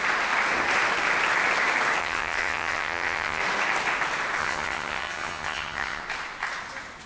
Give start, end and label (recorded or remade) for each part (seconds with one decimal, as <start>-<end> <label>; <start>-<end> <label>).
0.0-2.0 recorded; 2.0-3.4 remade; 3.4-4.4 recorded; 4.4-6.0 remade; 6.0-7.1 recorded